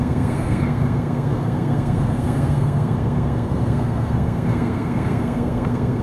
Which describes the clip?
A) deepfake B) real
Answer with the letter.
A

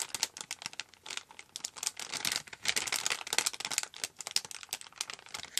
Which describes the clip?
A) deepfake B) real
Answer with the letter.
B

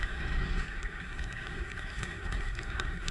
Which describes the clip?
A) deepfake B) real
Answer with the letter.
A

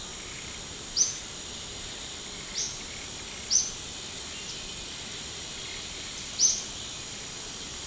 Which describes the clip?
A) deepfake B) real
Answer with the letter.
B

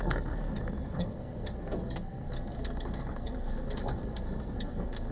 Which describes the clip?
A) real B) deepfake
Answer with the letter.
B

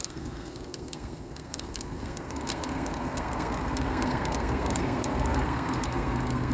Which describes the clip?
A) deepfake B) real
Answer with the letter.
A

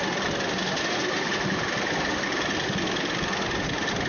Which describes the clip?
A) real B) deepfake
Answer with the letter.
A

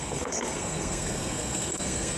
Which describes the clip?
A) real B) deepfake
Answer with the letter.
B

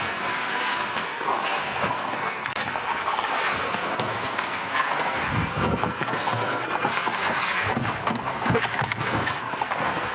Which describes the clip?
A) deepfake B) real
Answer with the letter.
A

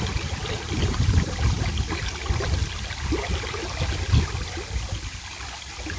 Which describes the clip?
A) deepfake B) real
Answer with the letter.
B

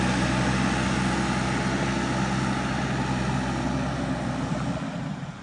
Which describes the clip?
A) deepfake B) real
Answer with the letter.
B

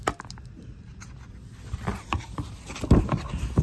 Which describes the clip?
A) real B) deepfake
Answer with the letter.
A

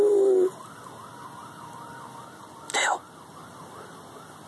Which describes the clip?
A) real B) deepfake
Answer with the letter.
A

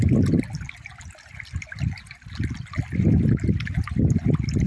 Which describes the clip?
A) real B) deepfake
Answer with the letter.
A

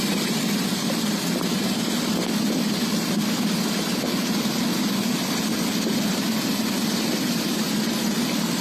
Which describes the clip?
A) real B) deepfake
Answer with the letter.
A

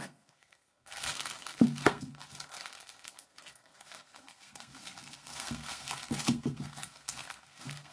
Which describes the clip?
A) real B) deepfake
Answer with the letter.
B